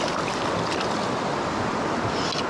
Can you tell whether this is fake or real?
real